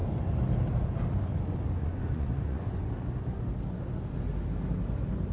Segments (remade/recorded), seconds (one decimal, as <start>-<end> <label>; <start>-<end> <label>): 0.0-1.8 recorded; 1.8-2.9 remade; 2.9-5.3 recorded